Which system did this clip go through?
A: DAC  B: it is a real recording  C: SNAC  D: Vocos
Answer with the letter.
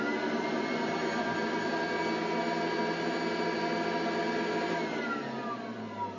B